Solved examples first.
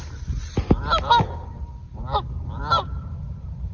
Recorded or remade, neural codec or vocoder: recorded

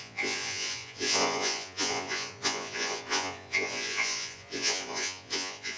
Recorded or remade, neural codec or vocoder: remade, vocoder, Vocos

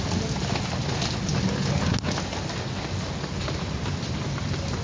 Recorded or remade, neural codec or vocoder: recorded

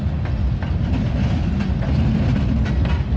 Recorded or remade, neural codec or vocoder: recorded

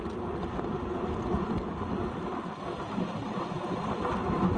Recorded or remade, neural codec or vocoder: recorded